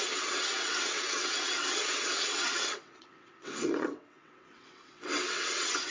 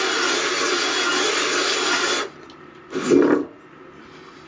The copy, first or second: first